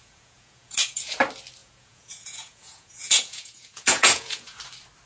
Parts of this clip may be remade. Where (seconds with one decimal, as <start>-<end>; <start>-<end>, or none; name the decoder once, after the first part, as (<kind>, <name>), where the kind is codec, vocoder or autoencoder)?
0.0-1.2 (vocoder, Vocos); 1.6-4.6